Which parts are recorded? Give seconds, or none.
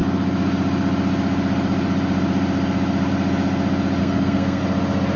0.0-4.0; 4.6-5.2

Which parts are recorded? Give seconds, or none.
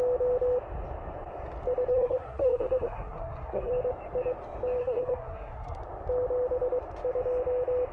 0.0-1.9; 3.7-4.8; 5.8-7.9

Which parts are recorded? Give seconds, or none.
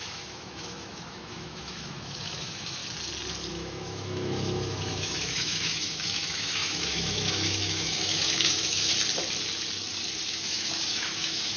2.8-3.5; 8.9-10.3